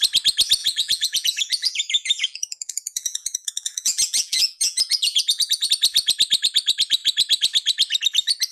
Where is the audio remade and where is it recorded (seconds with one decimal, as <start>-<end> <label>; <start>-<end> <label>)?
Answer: 0.0-0.6 recorded; 0.6-5.7 remade; 5.7-8.5 recorded